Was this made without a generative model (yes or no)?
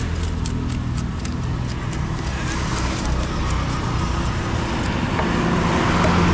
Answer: yes